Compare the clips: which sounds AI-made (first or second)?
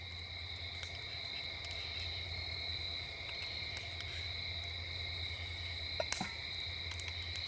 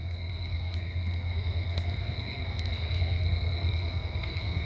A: second